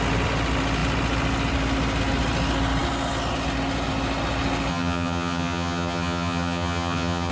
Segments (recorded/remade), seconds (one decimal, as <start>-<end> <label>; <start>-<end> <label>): 0.0-4.7 recorded; 4.7-7.3 remade